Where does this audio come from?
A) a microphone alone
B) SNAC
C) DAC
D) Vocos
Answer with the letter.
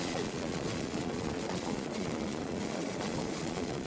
D